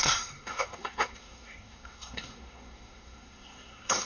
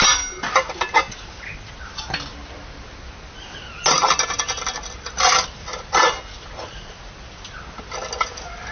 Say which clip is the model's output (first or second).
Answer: first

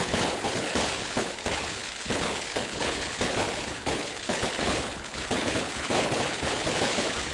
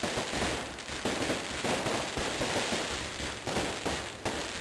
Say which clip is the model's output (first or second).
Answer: first